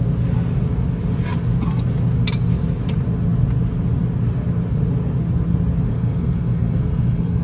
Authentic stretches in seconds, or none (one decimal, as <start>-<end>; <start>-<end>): 0.0-5.9